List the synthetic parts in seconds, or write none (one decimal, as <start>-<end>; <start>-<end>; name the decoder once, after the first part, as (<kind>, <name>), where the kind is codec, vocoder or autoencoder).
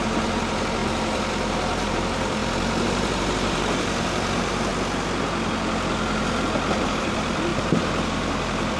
0.0-4.7 (vocoder, BigVGAN v2); 6.8-8.8